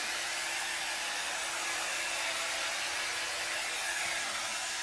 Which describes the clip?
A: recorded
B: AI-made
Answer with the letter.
A